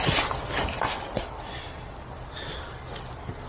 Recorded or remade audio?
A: recorded